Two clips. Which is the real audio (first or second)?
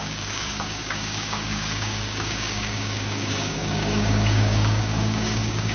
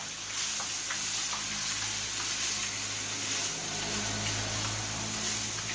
second